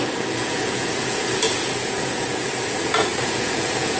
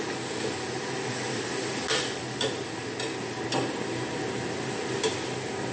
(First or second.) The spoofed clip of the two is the first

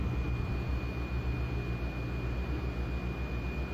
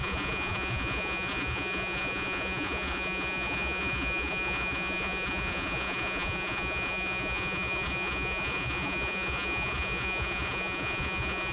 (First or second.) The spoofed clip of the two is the second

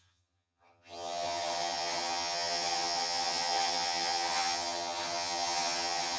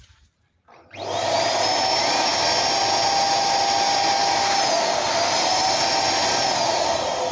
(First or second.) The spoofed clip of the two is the first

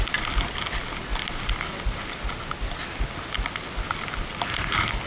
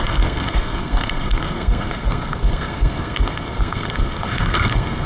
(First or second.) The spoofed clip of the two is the second